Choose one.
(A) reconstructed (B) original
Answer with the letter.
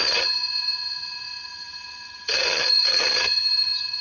A